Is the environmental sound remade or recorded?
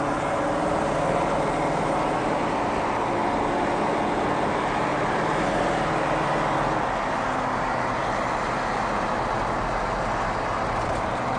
recorded